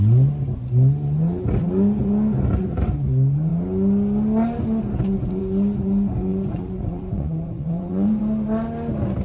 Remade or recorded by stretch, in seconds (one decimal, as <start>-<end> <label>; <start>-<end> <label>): 0.0-6.3 recorded; 6.3-8.2 remade; 8.2-9.2 recorded

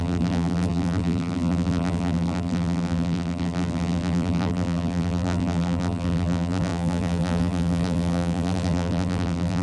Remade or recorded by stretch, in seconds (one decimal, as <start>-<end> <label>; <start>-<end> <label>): 0.0-9.6 remade

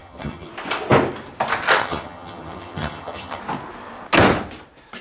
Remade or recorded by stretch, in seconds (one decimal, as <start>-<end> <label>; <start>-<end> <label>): 0.0-0.5 remade; 0.5-1.8 recorded; 1.8-3.4 remade; 3.4-5.0 recorded